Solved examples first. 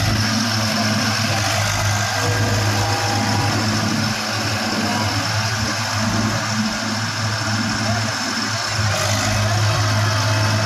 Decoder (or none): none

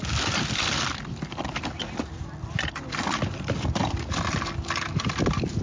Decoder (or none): none